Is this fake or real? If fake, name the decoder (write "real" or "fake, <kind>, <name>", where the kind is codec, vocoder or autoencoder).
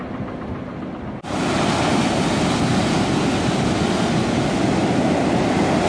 real